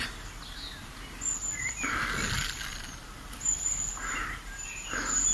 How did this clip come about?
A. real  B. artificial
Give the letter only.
A